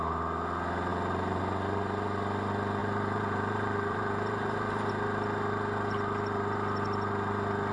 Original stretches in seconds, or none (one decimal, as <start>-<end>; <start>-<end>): 0.0-0.9; 1.4-2.8; 4.9-7.7